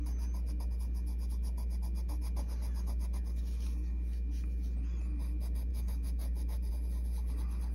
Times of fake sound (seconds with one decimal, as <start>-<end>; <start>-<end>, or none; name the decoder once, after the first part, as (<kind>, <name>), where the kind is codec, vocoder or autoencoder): 5.7-6.7 (autoencoder, DAC-VAE)

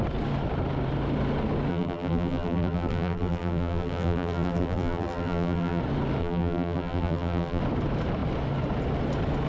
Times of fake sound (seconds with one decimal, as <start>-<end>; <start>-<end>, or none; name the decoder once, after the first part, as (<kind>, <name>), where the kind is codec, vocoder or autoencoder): 1.7-5.8 (vocoder, BigVGAN v2); 6.2-7.6

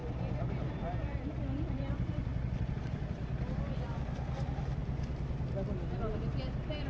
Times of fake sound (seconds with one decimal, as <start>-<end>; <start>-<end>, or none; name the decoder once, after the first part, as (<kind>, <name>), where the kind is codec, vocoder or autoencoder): 2.3-3.4 (vocoder, BigVGAN v2); 4.8-5.3

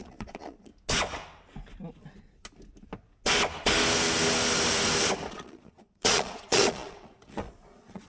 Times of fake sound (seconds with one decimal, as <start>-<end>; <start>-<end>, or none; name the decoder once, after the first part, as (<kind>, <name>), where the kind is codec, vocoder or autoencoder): 0.0-0.7 (vocoder, Vocos); 5.3-8.1